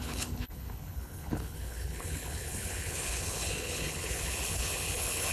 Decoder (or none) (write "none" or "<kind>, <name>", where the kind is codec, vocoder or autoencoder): codec, HILCodec